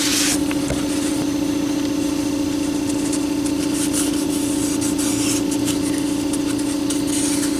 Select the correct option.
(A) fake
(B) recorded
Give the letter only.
B